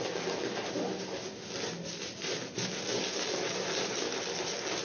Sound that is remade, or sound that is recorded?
recorded